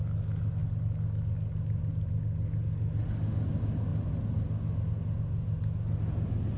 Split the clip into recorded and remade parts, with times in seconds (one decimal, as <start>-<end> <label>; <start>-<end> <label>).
0.0-6.6 recorded